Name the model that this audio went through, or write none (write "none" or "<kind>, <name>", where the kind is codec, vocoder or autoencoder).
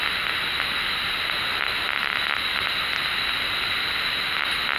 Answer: none